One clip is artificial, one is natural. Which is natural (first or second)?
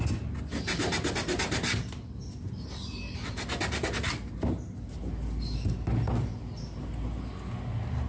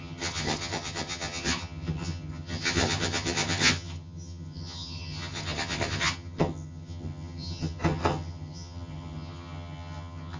first